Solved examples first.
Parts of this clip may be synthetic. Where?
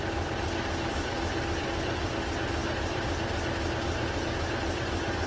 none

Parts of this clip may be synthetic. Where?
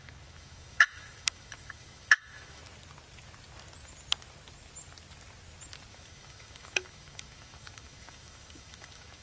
0.0-2.6 (autoencoder, DAC-VAE); 5.9-9.2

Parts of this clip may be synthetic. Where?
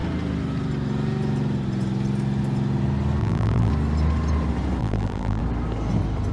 3.2-3.7 (vocoder, BigVGAN v2); 4.8-5.4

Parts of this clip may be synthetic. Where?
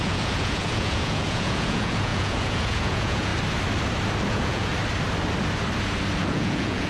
0.0-3.3 (vocoder, Vocos); 4.3-4.7; 6.2-6.9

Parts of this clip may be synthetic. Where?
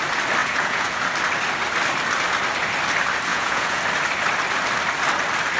0.4-1.0 (vocoder, Vocos); 3.3-3.8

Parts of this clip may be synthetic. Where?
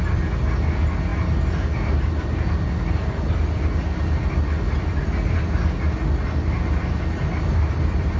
none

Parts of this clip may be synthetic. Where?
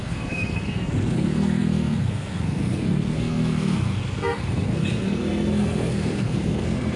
0.0-7.0 (codec, SNAC)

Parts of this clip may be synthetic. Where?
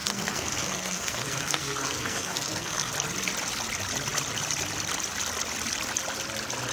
0.0-2.9 (codec, SNAC)